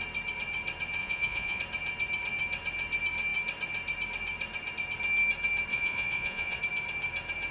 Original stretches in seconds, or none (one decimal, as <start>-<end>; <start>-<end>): 0.0-1.0; 1.6-5.7; 6.6-7.5